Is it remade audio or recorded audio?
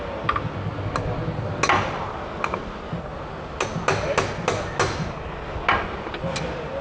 recorded